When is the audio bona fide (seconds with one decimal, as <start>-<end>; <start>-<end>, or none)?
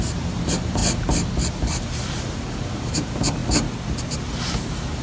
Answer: 0.8-1.5; 3.4-4.6